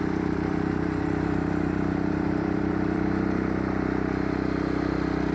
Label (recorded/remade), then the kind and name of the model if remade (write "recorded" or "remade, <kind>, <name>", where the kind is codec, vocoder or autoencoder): remade, vocoder, BigVGAN v2